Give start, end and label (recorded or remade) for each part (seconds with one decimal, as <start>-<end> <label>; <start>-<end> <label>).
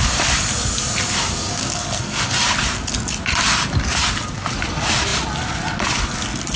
0.0-1.6 recorded; 1.6-2.2 remade; 2.2-6.6 recorded